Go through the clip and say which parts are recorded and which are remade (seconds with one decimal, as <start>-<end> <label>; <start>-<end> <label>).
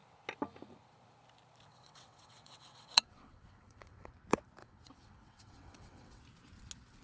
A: 0.0-1.7 recorded; 1.7-4.1 remade; 4.1-4.6 recorded; 4.6-6.2 remade; 6.2-7.0 recorded